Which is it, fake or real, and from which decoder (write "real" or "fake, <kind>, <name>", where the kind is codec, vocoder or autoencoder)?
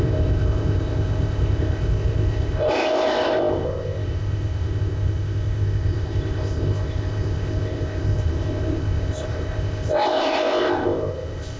fake, codec, ZipCodec